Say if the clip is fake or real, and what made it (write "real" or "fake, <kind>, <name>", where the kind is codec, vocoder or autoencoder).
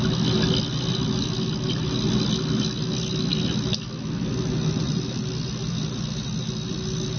real